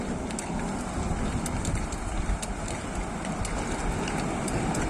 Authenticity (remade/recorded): recorded